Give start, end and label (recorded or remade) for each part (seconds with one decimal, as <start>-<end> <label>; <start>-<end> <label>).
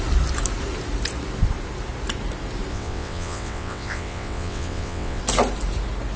0.0-2.7 recorded; 2.7-5.2 remade; 5.2-6.2 recorded